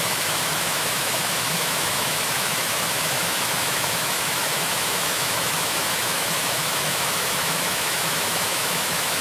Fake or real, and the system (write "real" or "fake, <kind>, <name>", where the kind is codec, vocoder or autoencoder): fake, autoencoder, DAC-VAE